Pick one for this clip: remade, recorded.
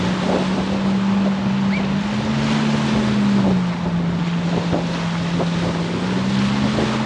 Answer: recorded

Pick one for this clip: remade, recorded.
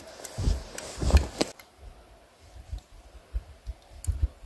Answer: recorded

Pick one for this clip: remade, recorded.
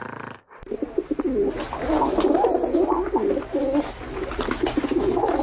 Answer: recorded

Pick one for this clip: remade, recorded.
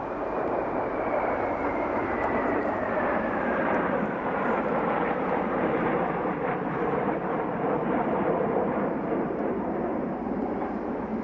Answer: remade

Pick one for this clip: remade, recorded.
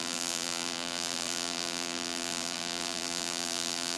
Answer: remade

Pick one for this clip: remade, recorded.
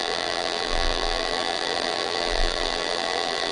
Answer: remade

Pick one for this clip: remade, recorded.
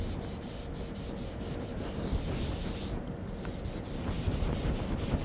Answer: recorded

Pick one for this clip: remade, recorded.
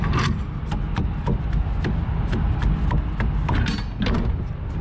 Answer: recorded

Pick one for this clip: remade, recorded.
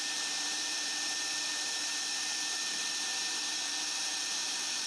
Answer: remade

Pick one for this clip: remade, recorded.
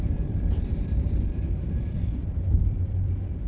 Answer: remade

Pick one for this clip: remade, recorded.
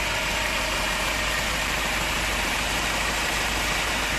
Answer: remade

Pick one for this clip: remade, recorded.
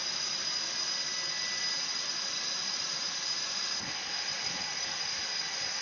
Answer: recorded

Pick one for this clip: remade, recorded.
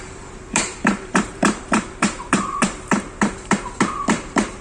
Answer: remade